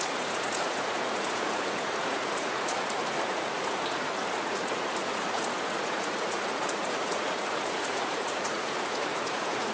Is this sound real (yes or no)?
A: no